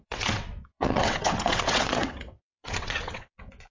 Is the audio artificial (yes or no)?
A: yes